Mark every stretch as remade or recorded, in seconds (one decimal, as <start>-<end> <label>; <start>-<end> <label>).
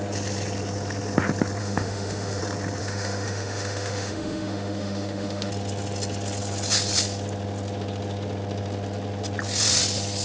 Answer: 0.0-1.6 recorded; 1.6-2.4 remade; 2.4-2.8 recorded; 2.8-5.5 remade; 5.5-10.2 recorded